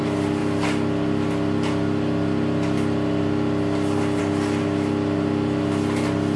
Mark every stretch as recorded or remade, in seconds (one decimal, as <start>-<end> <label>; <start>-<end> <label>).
0.0-6.4 recorded